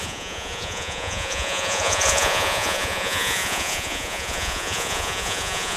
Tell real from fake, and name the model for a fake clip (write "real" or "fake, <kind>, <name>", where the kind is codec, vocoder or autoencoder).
fake, vocoder, Vocos